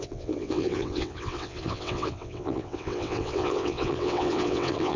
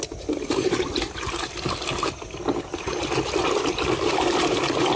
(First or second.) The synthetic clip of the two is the first